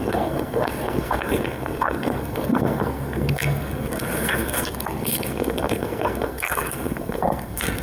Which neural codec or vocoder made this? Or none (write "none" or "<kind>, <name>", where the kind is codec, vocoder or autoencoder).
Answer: codec, SNAC